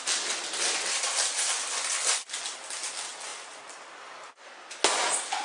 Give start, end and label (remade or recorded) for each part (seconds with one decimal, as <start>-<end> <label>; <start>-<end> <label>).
0.0-3.3 recorded; 3.3-4.3 remade; 4.3-5.4 recorded